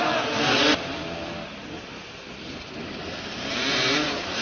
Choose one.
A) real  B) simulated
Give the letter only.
B